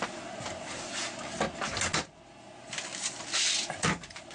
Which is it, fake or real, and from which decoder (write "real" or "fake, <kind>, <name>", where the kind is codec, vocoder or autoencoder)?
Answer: real